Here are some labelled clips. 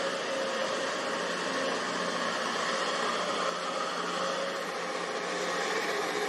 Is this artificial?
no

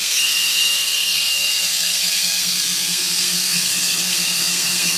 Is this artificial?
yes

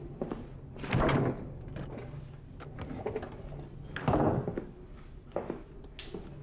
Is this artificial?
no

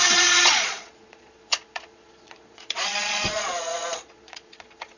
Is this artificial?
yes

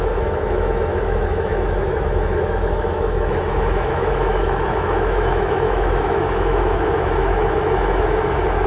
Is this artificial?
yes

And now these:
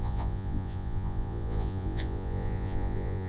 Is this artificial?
yes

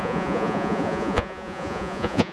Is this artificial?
yes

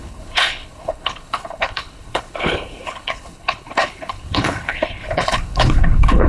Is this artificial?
yes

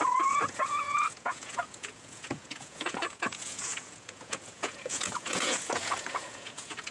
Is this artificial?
yes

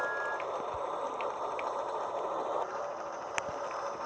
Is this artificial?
no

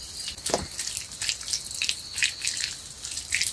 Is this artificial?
no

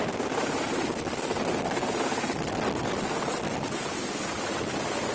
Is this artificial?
yes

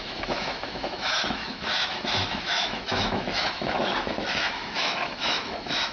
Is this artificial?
yes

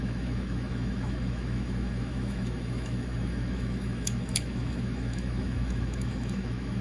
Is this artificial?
yes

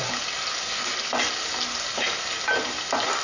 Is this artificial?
no